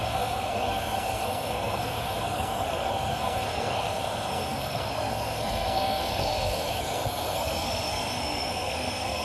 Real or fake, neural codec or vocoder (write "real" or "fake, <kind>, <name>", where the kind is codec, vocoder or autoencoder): fake, codec, SNAC